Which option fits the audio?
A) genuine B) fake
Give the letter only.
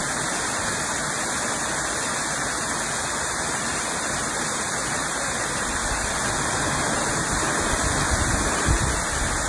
A